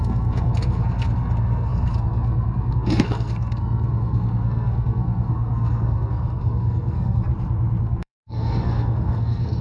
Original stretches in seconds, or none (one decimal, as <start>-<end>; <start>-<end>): 7.3-7.8